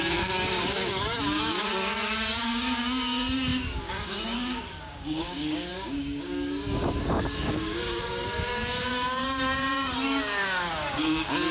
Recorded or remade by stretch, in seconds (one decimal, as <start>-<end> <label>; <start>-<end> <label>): 0.0-11.5 remade